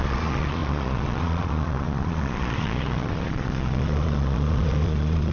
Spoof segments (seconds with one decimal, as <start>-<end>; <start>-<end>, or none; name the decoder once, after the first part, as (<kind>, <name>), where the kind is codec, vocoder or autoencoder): 0.0-5.3 (vocoder, Vocos)